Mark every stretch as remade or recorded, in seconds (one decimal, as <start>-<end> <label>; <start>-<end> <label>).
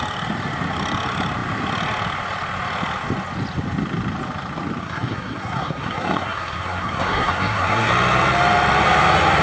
0.0-4.8 recorded; 4.8-7.9 remade; 7.9-9.4 recorded